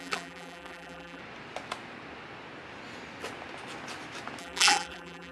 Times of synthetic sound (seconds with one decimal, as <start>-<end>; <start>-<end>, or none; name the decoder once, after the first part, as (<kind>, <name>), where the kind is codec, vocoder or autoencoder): 0.0-1.2 (vocoder, BigVGAN v2); 4.4-5.3